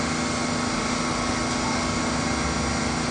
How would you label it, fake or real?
real